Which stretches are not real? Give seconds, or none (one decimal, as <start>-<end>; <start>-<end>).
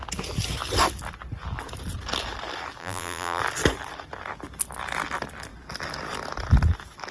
2.8-3.4